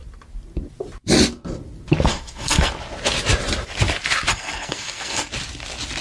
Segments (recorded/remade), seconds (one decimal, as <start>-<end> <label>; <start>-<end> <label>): 0.0-2.1 recorded; 2.1-2.7 remade; 2.7-4.3 recorded; 4.3-5.3 remade; 5.3-6.0 recorded